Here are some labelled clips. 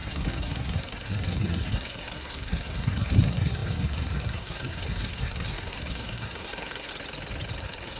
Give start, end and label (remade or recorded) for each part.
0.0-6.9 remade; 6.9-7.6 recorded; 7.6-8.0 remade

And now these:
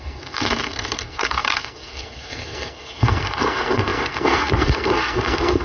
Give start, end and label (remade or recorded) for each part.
0.0-5.6 remade

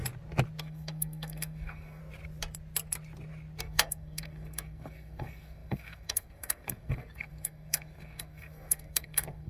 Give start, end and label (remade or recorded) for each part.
0.0-0.6 recorded; 0.6-2.0 remade; 2.0-3.6 recorded; 3.6-9.5 remade

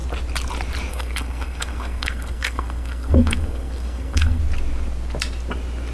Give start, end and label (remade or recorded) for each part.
0.0-0.9 recorded; 0.9-4.4 remade; 4.4-5.9 recorded